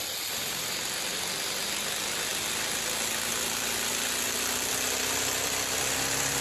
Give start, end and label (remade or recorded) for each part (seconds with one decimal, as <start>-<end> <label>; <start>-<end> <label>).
0.0-6.4 recorded

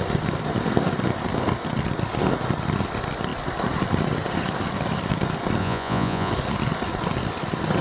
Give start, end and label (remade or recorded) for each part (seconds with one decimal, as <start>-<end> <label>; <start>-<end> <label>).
0.0-5.6 recorded; 5.6-6.3 remade; 6.3-7.8 recorded

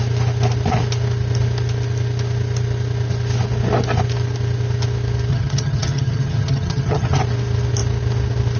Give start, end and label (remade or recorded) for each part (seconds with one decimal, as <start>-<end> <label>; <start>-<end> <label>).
0.0-5.3 recorded; 5.3-7.2 remade; 7.2-8.6 recorded